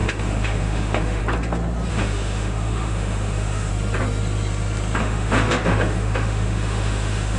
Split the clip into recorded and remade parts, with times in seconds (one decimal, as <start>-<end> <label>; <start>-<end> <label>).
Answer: 0.0-1.2 remade; 1.2-1.9 recorded; 1.9-3.7 remade; 3.7-5.0 recorded; 5.0-7.4 remade